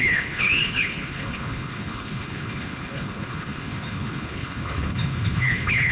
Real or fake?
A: fake